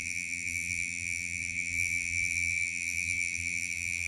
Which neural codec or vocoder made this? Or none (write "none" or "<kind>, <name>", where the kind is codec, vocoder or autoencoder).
vocoder, BigVGAN v2